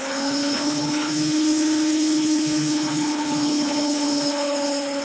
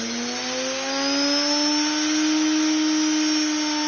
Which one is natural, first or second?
second